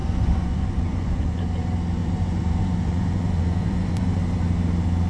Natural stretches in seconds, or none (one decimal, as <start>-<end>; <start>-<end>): 1.4-2.0; 4.2-5.1